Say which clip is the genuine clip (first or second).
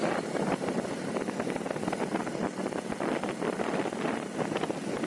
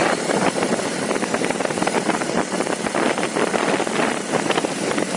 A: first